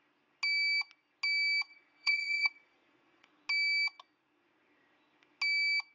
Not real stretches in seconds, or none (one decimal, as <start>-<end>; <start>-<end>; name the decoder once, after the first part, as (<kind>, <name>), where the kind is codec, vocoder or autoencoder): 1.7-3.3 (vocoder, Vocos)